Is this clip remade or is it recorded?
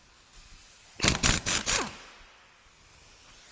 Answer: recorded